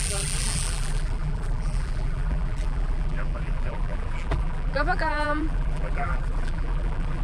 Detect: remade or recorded remade